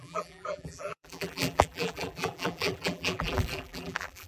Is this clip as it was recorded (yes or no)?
no